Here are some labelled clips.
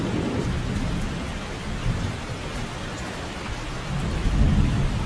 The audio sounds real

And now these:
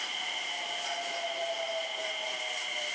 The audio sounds real